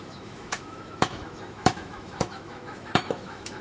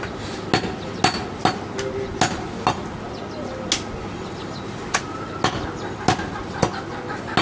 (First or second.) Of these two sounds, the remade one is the first